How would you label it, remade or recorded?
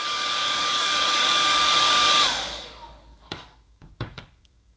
remade